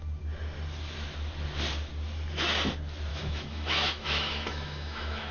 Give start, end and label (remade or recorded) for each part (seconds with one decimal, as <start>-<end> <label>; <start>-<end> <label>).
0.0-3.1 recorded; 3.1-5.3 remade